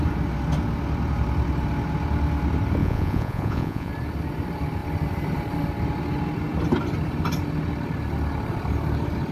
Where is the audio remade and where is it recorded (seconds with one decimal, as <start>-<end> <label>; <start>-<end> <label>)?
0.0-2.8 recorded; 2.8-3.9 remade; 3.9-9.3 recorded